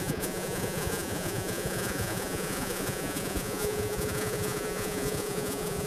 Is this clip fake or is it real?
fake